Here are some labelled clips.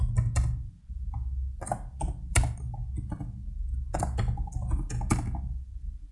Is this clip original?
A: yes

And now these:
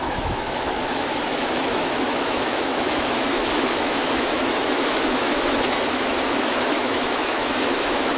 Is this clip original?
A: no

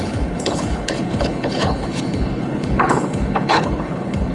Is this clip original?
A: no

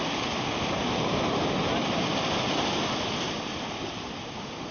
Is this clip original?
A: yes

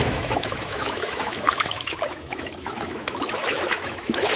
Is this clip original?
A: no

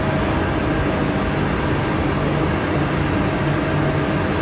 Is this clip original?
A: yes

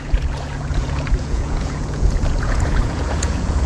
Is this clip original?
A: no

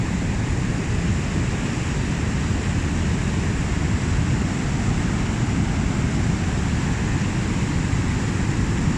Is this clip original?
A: yes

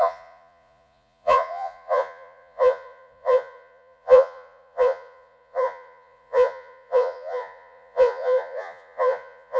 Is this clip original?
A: no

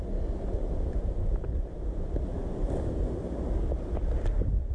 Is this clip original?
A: yes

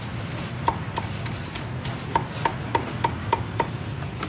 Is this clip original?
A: yes